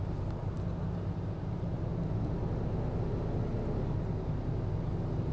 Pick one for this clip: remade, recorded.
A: recorded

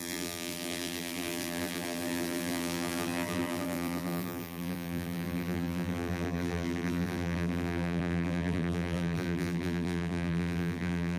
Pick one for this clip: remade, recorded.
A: remade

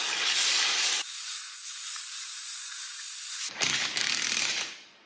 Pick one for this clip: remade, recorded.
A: remade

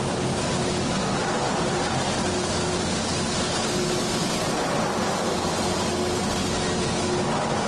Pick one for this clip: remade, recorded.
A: recorded